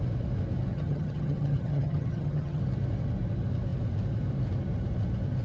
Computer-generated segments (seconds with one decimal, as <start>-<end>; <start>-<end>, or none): 0.7-2.6